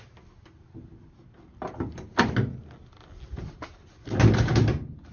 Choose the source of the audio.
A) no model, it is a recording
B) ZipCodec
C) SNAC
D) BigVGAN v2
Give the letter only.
A